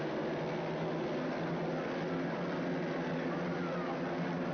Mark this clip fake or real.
real